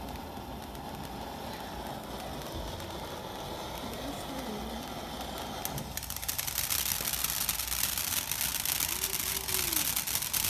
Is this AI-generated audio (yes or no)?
no